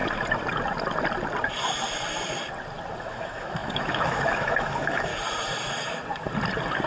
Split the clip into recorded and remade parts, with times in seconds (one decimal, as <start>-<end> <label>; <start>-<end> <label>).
0.0-3.0 recorded; 3.0-5.1 remade; 5.1-6.9 recorded